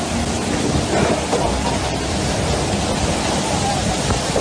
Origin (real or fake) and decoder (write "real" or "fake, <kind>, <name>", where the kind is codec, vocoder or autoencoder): real